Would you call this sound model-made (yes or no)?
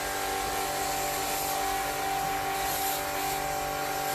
no